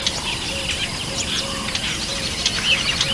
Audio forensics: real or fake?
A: real